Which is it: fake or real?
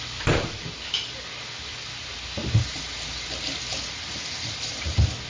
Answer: real